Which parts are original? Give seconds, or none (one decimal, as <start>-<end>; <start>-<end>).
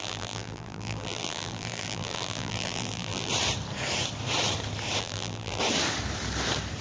3.3-5.0; 5.6-6.8